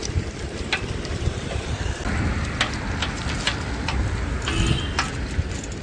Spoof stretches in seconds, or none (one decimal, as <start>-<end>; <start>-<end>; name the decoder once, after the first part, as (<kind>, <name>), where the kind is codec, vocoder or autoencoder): none

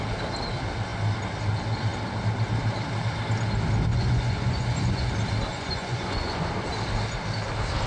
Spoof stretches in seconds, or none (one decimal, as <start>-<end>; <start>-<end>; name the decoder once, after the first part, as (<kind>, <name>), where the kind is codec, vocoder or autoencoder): 3.9-5.1 (vocoder, Vocos); 5.5-6.5

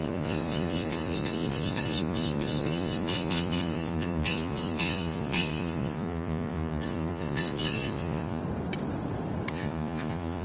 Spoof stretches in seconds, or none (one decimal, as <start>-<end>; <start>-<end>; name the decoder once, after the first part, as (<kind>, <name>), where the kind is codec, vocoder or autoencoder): 0.0-8.4 (vocoder, Vocos); 9.5-10.4